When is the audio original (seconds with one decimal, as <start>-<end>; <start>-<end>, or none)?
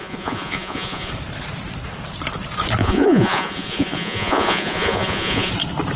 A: 1.1-2.8; 5.5-6.0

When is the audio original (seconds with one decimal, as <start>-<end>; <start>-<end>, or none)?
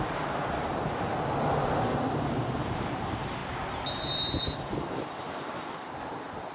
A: 1.1-2.2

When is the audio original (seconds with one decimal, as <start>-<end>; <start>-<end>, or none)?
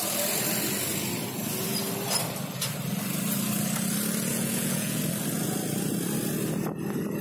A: 0.0-4.3; 5.0-7.2